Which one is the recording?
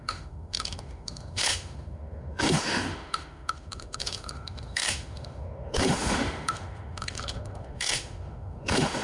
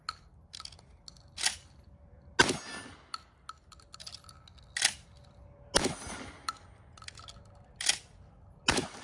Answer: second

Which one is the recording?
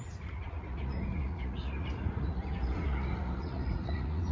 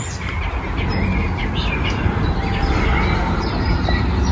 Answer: second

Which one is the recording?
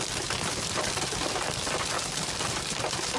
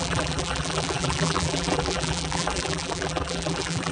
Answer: first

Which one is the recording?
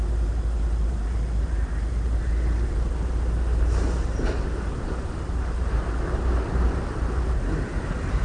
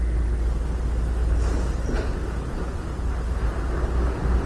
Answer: second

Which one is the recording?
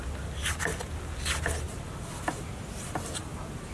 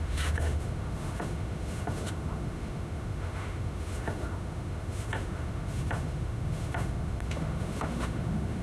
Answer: first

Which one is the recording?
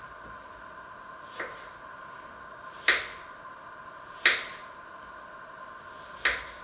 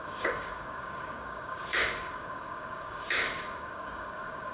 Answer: first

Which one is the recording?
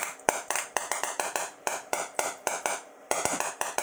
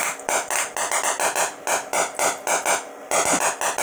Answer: second